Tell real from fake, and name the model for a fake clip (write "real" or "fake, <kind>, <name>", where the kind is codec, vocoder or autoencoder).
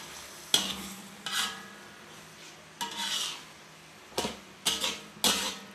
real